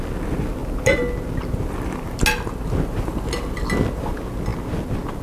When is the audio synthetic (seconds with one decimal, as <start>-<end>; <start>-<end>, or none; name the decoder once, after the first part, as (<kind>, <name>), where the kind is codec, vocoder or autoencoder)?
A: none